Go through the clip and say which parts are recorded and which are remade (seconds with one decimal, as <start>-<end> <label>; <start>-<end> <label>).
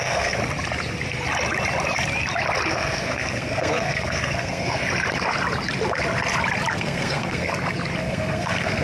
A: 0.0-0.4 remade; 0.4-2.7 recorded; 2.7-4.8 remade; 4.8-6.7 recorded; 6.7-7.5 remade; 7.5-8.0 recorded; 8.0-8.8 remade